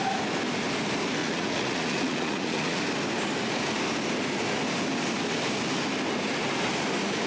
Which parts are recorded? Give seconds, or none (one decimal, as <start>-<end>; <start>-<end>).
0.0-1.2; 2.8-7.3